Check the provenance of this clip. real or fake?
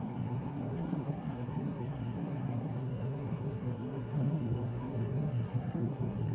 fake